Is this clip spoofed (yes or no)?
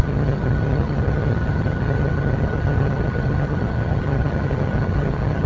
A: yes